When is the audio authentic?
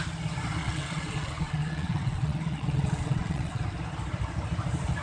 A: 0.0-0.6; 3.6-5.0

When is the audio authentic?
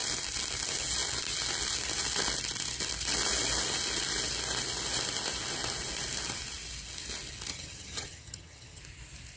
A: 0.0-7.5; 8.8-9.4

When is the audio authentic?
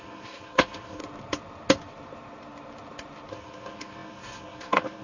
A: 1.0-3.3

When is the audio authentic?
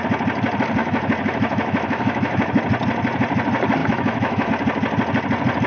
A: 0.0-0.8; 2.6-3.8; 4.5-5.7